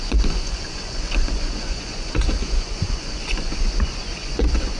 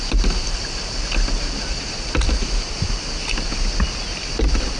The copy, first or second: first